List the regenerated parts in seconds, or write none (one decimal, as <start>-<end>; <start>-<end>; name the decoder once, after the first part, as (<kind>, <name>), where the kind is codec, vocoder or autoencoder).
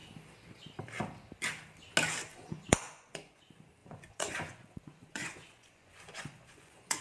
2.3-3.4 (vocoder, Vocos); 3.8-7.0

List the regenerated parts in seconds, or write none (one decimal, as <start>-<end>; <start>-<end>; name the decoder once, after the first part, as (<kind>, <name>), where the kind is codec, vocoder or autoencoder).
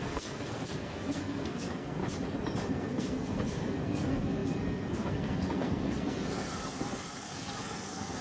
0.0-2.0 (codec, SNAC); 2.7-8.2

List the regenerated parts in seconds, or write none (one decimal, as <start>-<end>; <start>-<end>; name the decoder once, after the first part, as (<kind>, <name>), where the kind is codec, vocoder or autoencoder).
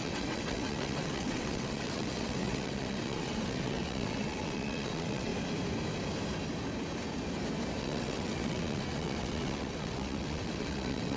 0.0-5.3 (vocoder, WaveNeXt); 7.8-11.2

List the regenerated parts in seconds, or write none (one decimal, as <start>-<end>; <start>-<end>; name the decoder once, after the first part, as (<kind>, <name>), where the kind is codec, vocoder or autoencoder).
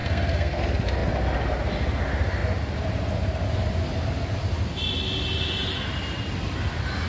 0.0-0.6 (codec, SNAC)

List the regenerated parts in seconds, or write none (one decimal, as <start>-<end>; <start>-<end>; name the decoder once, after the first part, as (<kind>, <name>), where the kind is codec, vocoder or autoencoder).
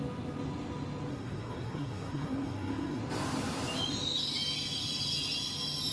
1.1-3.0 (codec, SNAC)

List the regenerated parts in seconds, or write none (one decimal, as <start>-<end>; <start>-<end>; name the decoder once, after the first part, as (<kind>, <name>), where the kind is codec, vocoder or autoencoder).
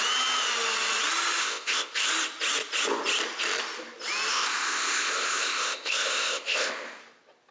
1.4-2.1 (codec, ZipCodec); 4.3-7.0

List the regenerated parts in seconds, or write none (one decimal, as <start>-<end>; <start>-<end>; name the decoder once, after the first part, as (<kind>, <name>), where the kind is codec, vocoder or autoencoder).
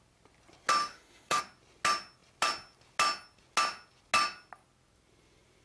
0.8-1.4 (autoencoder, DAC-VAE)